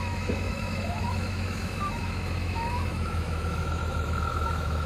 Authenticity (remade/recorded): remade